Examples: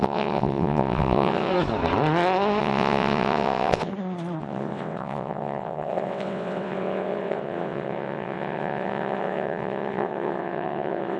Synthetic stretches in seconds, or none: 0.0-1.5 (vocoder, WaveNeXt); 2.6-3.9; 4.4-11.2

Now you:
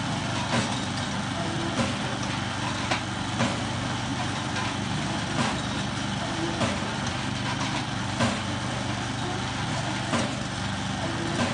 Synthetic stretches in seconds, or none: 4.1-8.2 (vocoder, BigVGAN v2)

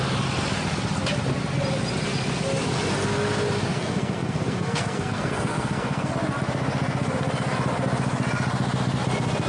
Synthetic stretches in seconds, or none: 3.7-6.1 (codec, SNAC)

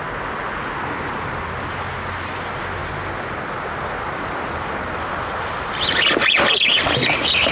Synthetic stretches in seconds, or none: none

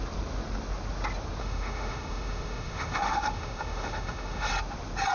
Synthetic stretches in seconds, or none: 1.4-4.5 (autoencoder, DAC-VAE)

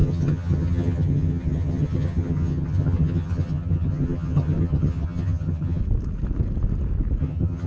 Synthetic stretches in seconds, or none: 0.0-5.8 (vocoder, HiFi-GAN); 7.2-7.7

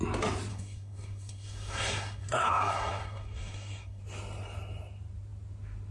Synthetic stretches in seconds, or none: 0.5-4.0 (codec, SNAC)

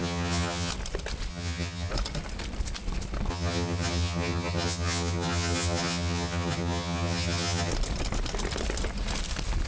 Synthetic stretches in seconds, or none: 0.0-0.7 (vocoder, HiFi-GAN); 1.3-1.9; 3.3-7.7